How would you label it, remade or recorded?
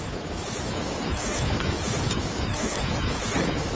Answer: remade